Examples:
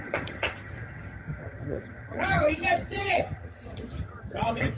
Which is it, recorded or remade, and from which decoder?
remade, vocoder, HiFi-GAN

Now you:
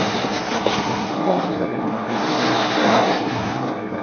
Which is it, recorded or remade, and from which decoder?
remade, codec, SNAC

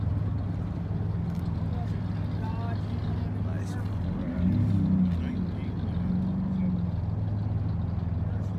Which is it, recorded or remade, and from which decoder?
recorded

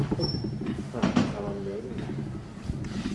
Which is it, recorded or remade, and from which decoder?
remade, vocoder, BigVGAN v2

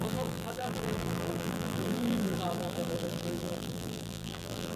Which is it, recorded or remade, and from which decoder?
remade, vocoder, BigVGAN v2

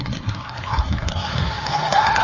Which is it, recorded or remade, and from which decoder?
remade, codec, SNAC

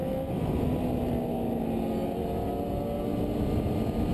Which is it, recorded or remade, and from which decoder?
recorded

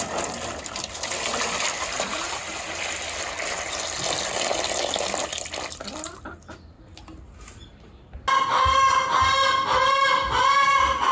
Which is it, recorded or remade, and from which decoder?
recorded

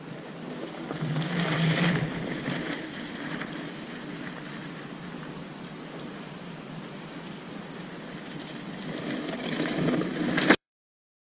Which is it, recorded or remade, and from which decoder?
remade, vocoder, BigVGAN v2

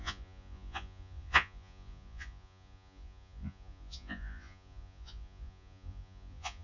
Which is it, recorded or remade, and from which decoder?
remade, vocoder, Vocos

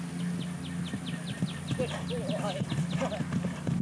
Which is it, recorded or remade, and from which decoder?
recorded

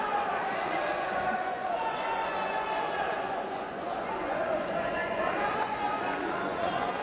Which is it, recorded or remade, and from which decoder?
remade, vocoder, Vocos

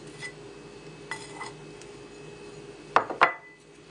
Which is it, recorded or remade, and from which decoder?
recorded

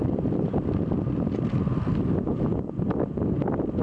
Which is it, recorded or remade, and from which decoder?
recorded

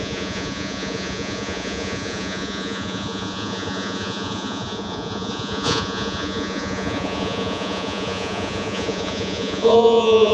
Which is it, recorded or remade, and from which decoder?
remade, vocoder, Vocos